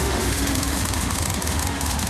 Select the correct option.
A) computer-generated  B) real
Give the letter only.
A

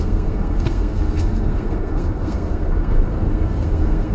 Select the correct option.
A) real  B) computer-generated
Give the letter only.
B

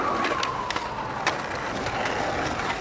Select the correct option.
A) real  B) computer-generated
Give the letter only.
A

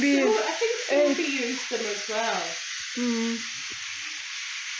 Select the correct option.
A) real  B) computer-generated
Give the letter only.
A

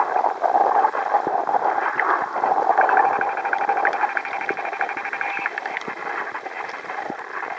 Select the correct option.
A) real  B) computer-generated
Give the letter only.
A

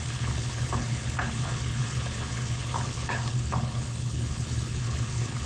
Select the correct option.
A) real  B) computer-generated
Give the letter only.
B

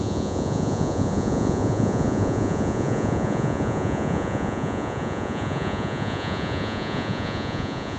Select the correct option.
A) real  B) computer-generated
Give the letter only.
B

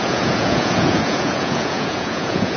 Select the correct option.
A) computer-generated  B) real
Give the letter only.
A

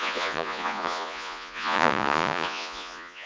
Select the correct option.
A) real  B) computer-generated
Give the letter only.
B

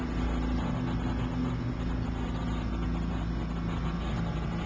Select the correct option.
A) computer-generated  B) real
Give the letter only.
B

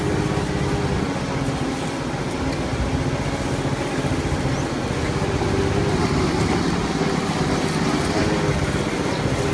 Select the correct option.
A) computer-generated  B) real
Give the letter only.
B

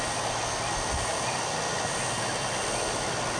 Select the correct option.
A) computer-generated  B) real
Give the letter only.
B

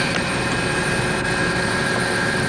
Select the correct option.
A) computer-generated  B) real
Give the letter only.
B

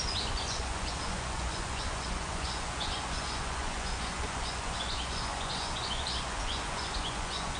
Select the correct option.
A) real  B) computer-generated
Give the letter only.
B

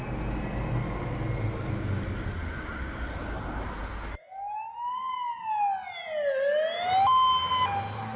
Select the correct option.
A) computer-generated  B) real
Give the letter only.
B